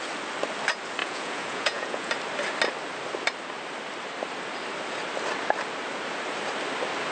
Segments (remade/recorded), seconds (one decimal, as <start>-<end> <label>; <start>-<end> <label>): 0.0-1.0 recorded; 1.0-2.1 remade; 2.1-7.1 recorded